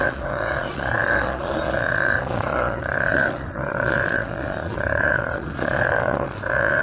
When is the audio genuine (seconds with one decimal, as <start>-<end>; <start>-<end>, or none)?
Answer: none